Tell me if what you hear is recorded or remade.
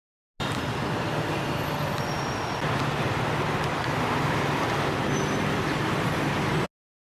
recorded